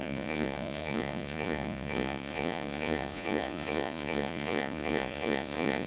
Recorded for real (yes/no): no